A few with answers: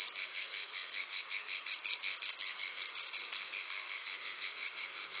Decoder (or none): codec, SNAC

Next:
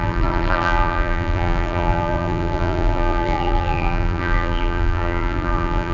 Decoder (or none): vocoder, BigVGAN v2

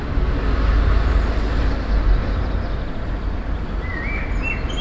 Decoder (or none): none